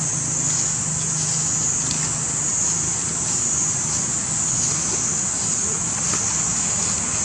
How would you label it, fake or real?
real